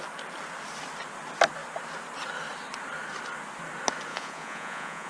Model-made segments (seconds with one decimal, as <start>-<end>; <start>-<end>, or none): 4.1-5.1